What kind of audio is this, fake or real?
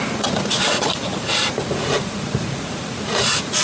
fake